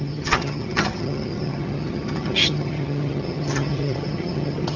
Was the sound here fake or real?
fake